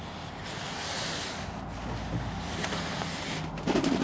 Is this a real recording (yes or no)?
yes